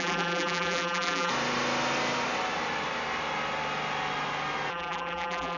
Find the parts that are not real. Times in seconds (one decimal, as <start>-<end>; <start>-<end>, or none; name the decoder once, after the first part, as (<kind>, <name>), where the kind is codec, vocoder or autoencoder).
0.0-1.3 (vocoder, BigVGAN v2); 4.7-5.6